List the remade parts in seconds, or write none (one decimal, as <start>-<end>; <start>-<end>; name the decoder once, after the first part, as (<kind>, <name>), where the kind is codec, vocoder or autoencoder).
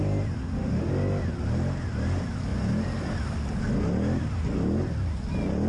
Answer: 0.4-0.9 (autoencoder, DAC-VAE)